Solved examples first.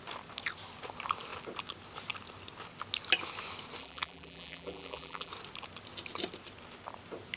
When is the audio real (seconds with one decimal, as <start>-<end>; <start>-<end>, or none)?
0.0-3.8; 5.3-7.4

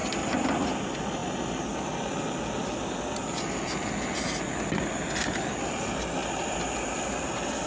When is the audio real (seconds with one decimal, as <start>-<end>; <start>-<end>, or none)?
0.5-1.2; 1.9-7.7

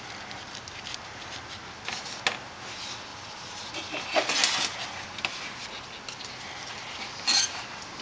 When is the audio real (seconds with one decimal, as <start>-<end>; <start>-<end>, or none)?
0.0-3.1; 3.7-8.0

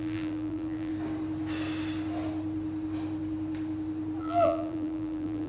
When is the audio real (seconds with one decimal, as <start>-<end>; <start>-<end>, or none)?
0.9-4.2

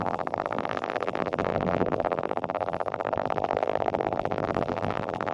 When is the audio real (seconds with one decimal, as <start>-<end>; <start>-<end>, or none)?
none